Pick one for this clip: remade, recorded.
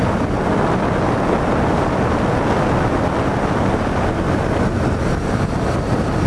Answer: recorded